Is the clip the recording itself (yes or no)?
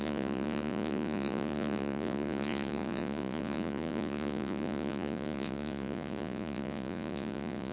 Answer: no